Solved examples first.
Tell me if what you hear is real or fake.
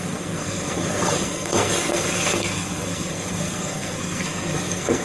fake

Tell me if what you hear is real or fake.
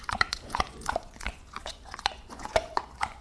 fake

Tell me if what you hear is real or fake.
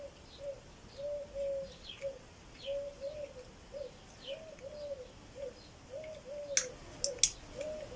real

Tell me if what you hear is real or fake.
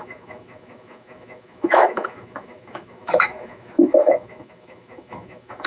fake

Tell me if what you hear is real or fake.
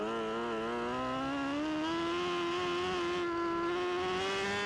real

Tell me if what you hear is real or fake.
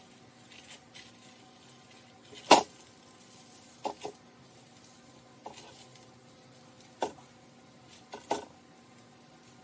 real